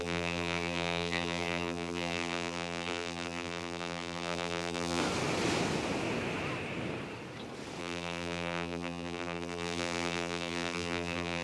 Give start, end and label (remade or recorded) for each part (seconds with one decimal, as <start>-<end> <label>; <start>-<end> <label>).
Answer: 0.0-5.0 remade; 5.0-7.8 recorded; 7.8-11.4 remade